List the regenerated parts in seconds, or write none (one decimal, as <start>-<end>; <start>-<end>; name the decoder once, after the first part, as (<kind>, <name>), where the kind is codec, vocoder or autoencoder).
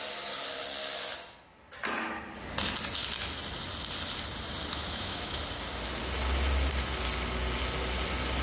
4.7-5.4 (autoencoder, DAC-VAE)